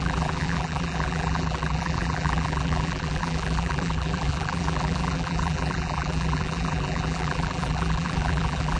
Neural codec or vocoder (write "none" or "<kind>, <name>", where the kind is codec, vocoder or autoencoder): vocoder, BigVGAN v2